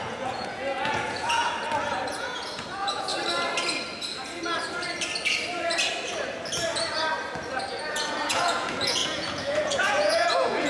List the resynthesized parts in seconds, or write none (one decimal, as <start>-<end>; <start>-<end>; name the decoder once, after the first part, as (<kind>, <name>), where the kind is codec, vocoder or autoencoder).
0.0-1.4 (vocoder, Vocos); 2.2-3.1; 7.7-10.7